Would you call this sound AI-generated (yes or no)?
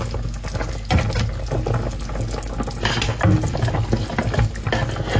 no